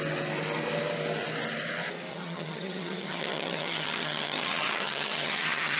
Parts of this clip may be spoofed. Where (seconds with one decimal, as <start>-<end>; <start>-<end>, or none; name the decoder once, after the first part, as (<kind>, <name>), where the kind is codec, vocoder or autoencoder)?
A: 2.1-5.8 (vocoder, HiFi-GAN)

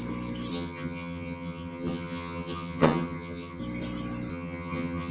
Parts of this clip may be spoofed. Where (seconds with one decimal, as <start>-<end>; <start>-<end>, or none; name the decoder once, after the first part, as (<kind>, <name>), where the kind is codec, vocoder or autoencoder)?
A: 0.5-3.6 (vocoder, HiFi-GAN); 4.3-5.1